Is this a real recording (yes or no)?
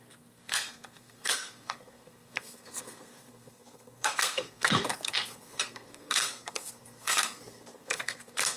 no